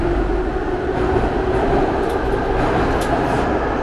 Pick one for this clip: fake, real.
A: real